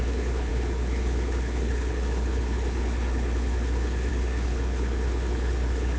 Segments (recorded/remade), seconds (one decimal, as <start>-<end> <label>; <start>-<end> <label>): 0.0-6.0 remade